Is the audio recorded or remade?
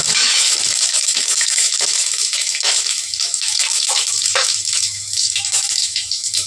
remade